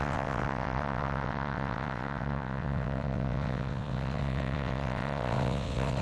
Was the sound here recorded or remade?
remade